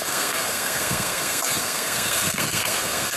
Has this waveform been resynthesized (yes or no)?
yes